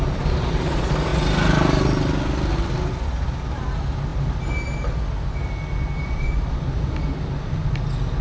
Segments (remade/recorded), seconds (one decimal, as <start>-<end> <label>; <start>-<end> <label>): 0.0-8.2 recorded